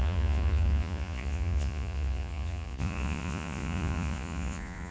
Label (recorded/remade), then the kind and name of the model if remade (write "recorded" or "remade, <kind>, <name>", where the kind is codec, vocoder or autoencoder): remade, vocoder, Vocos